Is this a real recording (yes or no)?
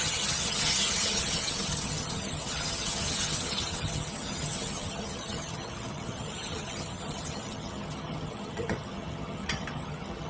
no